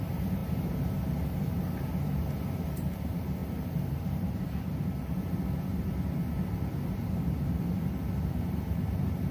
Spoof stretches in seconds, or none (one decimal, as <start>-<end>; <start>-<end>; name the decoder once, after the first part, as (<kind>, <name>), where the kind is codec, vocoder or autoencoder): 0.0-9.3 (vocoder, BigVGAN v2)